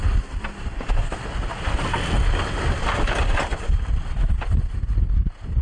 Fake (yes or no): no